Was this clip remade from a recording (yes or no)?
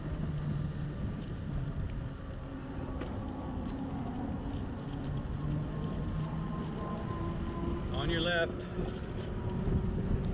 no